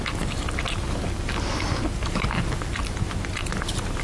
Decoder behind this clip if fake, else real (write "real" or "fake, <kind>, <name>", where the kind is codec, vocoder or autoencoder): real